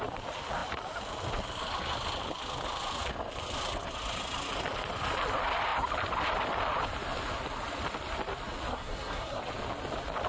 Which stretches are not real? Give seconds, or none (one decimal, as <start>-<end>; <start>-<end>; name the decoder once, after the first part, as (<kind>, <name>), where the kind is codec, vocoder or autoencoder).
8.7-9.4 (codec, SNAC)